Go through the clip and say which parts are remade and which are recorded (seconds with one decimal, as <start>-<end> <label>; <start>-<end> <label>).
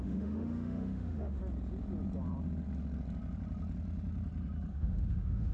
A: 0.0-1.4 remade; 1.4-4.7 recorded; 4.7-5.5 remade